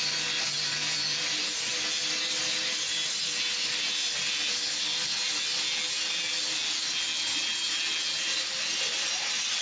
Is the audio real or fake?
real